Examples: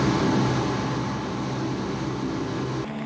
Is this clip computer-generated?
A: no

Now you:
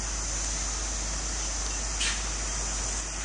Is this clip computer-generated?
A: no